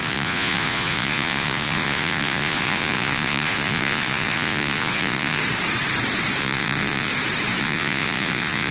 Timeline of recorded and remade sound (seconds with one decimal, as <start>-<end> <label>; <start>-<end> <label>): 0.0-5.4 remade; 5.4-6.4 recorded; 6.4-7.1 remade; 7.1-7.6 recorded; 7.6-8.7 remade

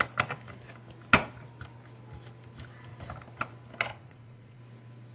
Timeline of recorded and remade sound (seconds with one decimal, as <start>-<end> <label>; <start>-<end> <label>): 0.0-3.9 recorded; 3.9-4.6 remade; 4.6-5.1 recorded

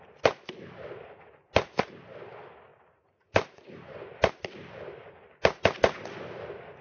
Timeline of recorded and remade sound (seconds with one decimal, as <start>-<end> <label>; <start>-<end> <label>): 0.0-2.7 recorded; 2.7-4.3 remade; 4.3-6.8 recorded

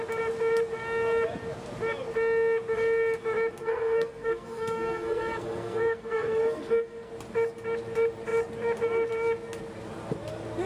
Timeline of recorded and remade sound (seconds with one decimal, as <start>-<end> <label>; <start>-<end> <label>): 0.0-3.6 recorded; 3.6-7.1 remade; 7.1-10.7 recorded

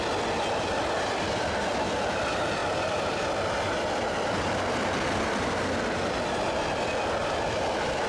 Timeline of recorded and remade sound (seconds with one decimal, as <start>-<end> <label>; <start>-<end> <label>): 0.0-2.6 recorded; 2.6-4.1 remade; 4.1-7.2 recorded; 7.2-8.1 remade

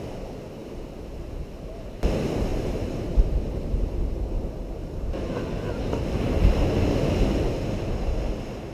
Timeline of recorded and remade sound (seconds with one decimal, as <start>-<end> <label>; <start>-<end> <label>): 0.0-0.6 recorded; 0.6-1.4 remade; 1.4-2.5 recorded; 2.5-5.2 remade; 5.2-8.7 recorded

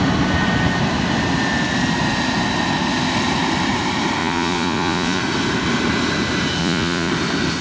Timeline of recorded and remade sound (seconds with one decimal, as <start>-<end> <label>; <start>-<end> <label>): 0.0-4.2 recorded; 4.2-5.2 remade; 5.2-6.6 recorded; 6.6-7.1 remade; 7.1-7.6 recorded

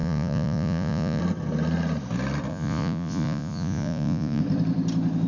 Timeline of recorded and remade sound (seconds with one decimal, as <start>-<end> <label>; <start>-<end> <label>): 0.0-1.2 remade; 1.2-2.5 recorded; 2.5-4.4 remade; 4.4-5.3 recorded